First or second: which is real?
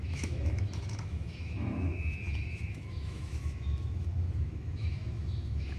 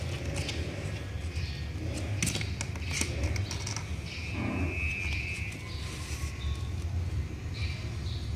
second